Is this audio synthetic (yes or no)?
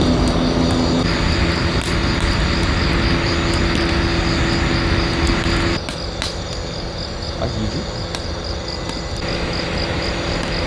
no